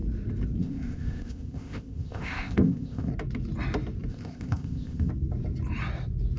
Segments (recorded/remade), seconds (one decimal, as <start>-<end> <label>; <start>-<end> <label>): 0.0-0.6 recorded; 0.6-3.1 remade; 3.1-4.1 recorded; 4.1-5.1 remade; 5.1-6.4 recorded